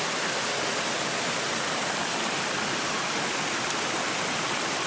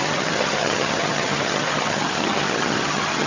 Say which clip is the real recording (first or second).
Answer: first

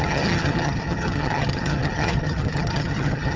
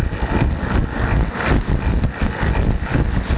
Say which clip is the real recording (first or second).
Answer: second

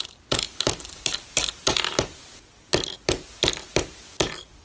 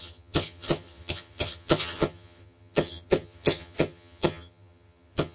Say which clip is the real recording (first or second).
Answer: first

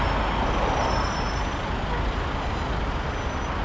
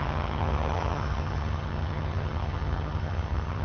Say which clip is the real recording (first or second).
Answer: first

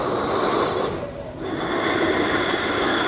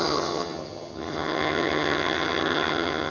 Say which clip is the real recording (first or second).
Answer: first